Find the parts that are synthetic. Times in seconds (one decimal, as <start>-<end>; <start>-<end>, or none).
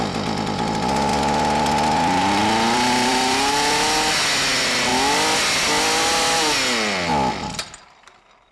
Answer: 1.1-4.2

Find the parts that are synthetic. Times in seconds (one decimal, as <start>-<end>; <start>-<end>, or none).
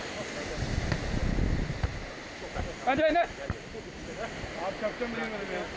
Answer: none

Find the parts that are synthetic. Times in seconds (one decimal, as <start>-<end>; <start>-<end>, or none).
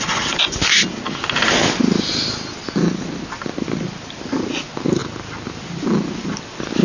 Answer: none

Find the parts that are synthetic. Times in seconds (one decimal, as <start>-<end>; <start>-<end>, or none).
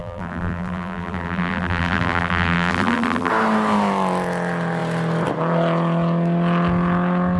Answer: 0.0-3.3